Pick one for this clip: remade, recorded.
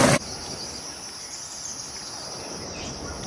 recorded